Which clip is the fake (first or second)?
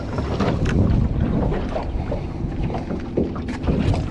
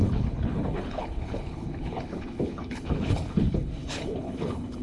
second